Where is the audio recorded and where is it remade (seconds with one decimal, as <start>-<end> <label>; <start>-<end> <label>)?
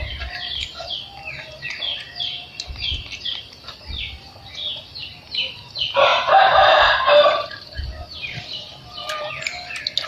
0.0-1.9 recorded; 1.9-3.5 remade; 3.5-6.1 recorded; 6.1-9.3 remade; 9.3-10.1 recorded